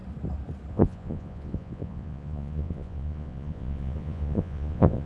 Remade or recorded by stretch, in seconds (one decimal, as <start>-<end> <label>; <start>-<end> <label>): 0.0-0.7 recorded; 0.7-5.1 remade